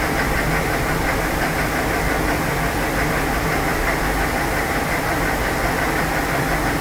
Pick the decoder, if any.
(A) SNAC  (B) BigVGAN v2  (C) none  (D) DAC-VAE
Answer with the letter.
C